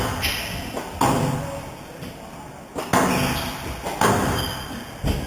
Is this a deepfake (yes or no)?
no